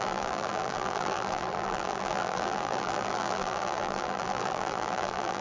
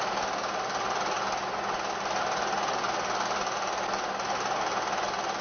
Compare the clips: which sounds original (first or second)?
second